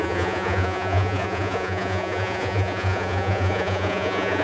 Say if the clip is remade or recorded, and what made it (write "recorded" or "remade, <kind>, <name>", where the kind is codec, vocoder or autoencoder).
remade, vocoder, Vocos